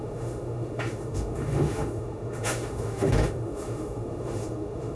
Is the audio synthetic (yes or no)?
yes